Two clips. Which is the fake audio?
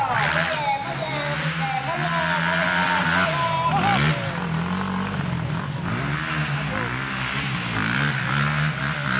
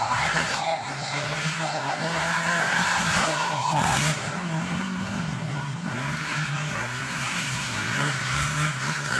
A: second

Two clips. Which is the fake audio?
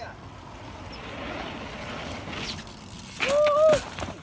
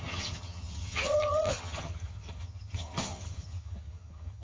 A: second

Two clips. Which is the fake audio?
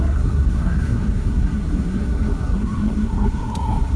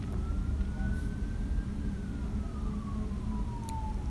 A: first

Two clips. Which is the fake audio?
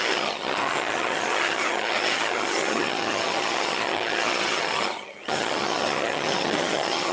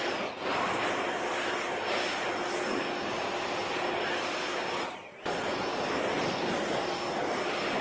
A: first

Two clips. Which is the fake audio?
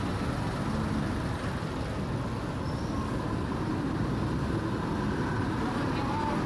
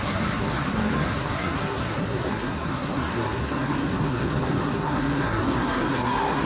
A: second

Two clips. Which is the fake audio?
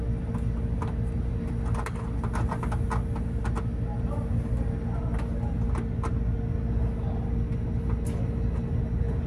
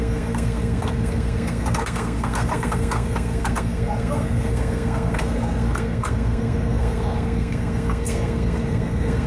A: second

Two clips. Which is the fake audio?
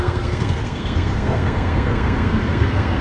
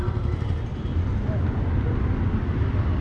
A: first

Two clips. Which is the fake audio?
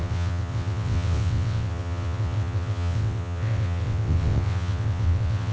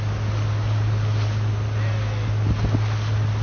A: first